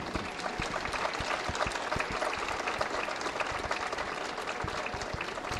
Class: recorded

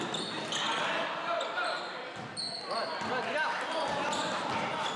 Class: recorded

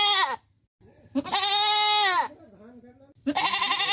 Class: recorded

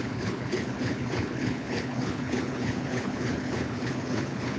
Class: remade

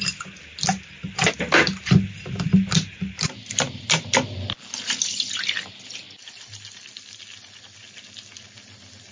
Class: recorded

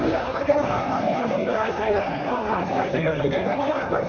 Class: remade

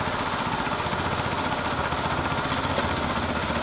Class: recorded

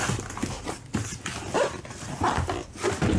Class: recorded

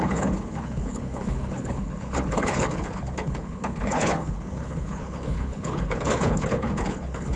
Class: remade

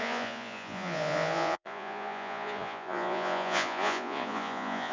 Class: remade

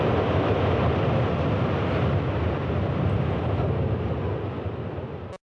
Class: recorded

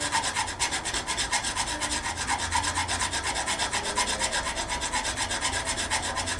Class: recorded